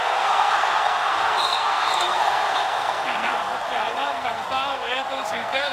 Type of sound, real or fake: fake